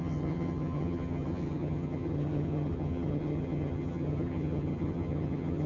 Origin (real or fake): fake